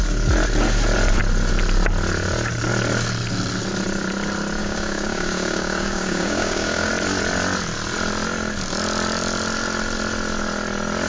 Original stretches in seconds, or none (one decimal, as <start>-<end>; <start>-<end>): 0.0-4.6; 6.9-11.1